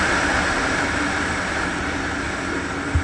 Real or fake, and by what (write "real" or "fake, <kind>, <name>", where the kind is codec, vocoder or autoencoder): real